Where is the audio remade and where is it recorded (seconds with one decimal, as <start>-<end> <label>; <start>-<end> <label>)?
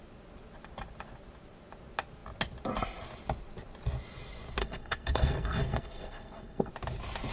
0.0-4.6 recorded; 4.6-6.7 remade; 6.7-7.3 recorded